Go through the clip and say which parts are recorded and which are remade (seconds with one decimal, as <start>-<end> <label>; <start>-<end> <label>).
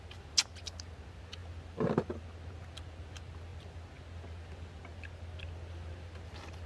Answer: 0.0-6.7 recorded